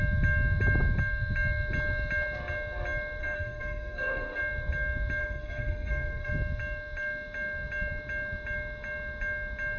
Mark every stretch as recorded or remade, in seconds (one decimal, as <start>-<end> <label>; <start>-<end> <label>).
0.0-3.2 recorded; 3.2-4.4 remade; 4.4-5.2 recorded; 5.2-6.3 remade; 6.3-9.8 recorded